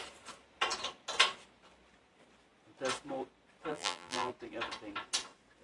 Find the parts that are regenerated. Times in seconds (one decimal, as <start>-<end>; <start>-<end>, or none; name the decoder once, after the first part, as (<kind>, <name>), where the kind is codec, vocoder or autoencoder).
3.7-4.3 (vocoder, BigVGAN v2)